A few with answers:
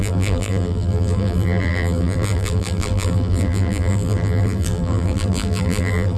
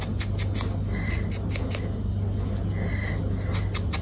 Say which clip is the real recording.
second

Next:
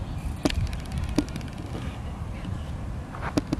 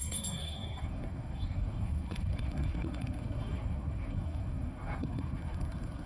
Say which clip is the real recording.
first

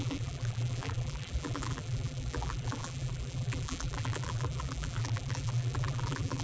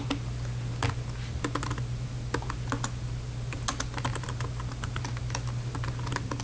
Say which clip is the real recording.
second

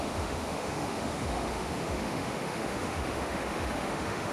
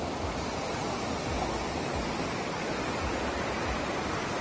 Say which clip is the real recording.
second